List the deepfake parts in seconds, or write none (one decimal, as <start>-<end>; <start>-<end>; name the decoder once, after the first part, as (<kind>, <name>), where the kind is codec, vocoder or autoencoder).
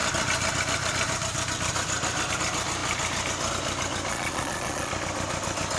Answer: 4.1-4.9 (vocoder, Vocos)